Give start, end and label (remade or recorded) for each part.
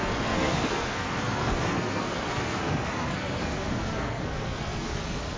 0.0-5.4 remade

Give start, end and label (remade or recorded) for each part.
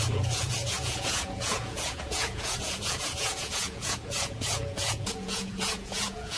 0.0-6.4 remade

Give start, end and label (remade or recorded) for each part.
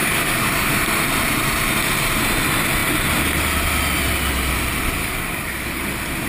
0.0-0.7 remade; 0.7-5.0 recorded; 5.0-5.8 remade; 5.8-6.3 recorded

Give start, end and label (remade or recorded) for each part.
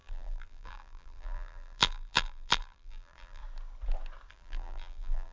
0.0-3.4 remade; 3.4-4.3 recorded; 4.3-5.3 remade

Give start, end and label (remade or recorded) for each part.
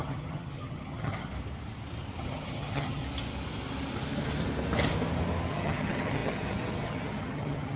0.0-1.3 remade; 1.3-2.2 recorded; 2.2-3.0 remade; 3.0-5.5 recorded; 5.5-7.8 remade